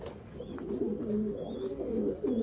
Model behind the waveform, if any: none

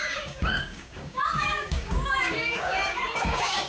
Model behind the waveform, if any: codec, DAC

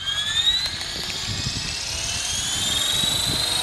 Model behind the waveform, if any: none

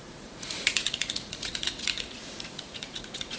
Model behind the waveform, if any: vocoder, Vocos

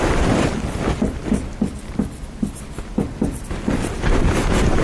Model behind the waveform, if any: vocoder, BigVGAN v2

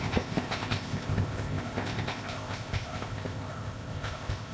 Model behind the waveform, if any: codec, ZipCodec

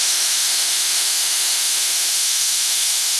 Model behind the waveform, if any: autoencoder, DAC-VAE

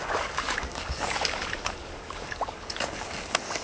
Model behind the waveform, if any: codec, DAC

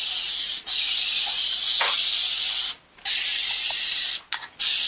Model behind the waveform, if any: none